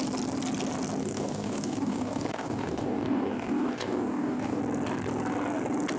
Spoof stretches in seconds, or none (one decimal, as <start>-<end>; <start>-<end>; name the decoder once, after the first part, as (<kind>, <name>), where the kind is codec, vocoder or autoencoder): 1.0-4.6 (codec, DAC)